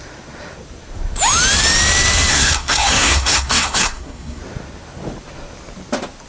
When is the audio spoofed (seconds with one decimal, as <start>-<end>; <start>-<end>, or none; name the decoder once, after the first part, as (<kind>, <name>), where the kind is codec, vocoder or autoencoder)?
2.3-4.4 (codec, SNAC)